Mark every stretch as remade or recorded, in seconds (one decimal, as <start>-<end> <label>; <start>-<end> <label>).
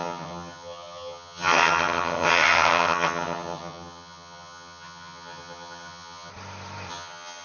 0.0-6.3 remade; 6.3-6.9 recorded; 6.9-7.4 remade